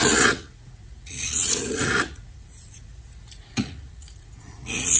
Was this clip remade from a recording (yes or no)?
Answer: yes